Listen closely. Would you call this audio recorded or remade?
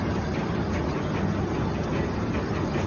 recorded